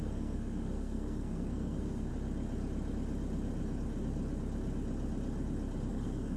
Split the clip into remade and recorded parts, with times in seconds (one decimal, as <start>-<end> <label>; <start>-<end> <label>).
0.0-2.1 remade; 2.1-5.9 recorded; 5.9-6.4 remade